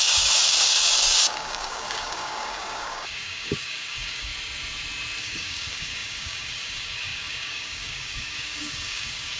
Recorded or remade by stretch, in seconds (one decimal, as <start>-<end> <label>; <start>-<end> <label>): 0.0-4.3 remade; 4.3-5.2 recorded; 5.2-9.4 remade